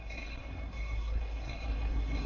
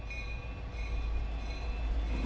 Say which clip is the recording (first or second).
second